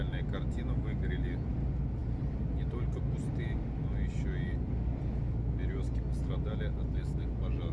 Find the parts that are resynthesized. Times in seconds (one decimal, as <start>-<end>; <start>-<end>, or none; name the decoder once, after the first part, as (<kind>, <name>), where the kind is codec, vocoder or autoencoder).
none